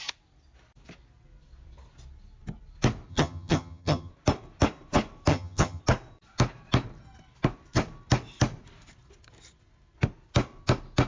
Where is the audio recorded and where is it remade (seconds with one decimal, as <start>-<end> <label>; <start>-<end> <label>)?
0.0-3.1 recorded; 3.1-4.1 remade; 4.1-5.3 recorded; 5.3-5.8 remade; 5.8-11.1 recorded